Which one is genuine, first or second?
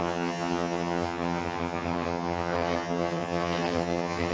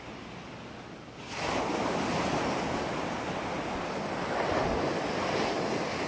second